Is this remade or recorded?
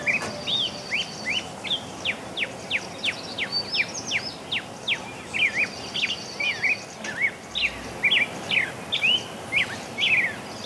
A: recorded